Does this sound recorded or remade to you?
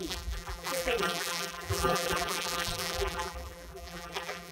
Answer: remade